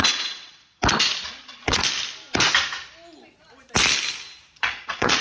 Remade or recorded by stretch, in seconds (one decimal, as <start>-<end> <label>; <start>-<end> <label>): 0.0-0.8 remade; 0.8-1.3 recorded; 1.3-1.8 remade; 1.8-4.6 recorded; 4.6-5.2 remade